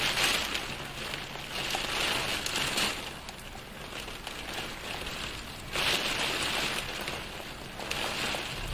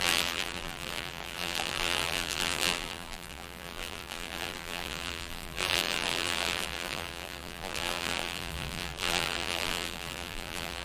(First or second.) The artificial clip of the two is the second